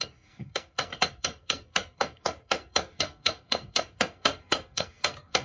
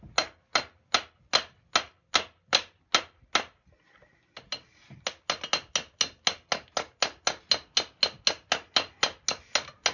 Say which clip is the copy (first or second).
first